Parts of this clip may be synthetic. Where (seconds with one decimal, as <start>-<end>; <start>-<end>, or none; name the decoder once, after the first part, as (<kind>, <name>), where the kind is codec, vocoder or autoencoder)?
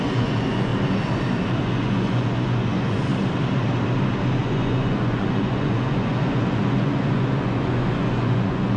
0.0-0.7 (vocoder, Vocos); 1.6-3.1; 4.4-8.8